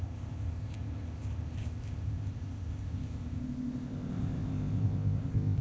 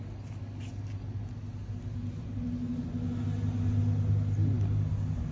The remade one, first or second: first